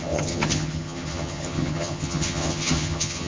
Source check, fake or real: fake